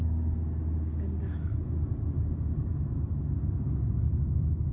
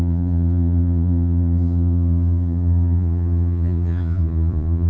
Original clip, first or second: first